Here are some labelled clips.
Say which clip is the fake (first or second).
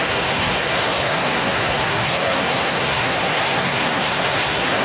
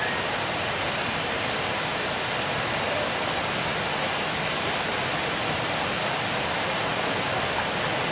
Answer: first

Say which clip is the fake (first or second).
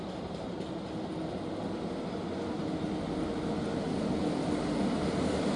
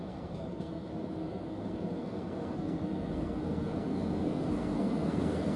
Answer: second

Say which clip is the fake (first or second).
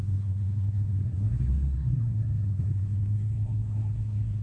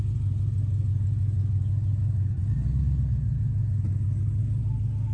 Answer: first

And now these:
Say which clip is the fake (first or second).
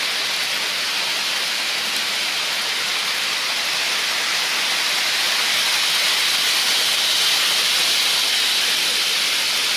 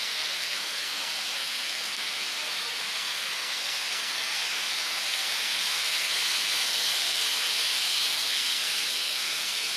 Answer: second